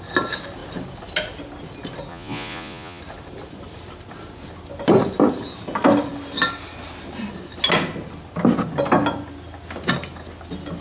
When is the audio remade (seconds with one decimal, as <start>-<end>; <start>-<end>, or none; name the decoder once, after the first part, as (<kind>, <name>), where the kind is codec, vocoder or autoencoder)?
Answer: 2.1-3.0 (vocoder, Vocos)